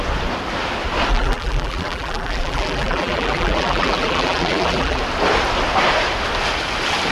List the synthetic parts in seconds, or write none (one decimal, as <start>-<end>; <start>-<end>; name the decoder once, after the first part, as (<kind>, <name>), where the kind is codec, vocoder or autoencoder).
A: 1.1-5.0 (vocoder, BigVGAN v2)